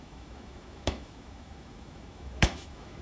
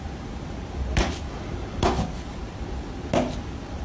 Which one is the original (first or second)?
second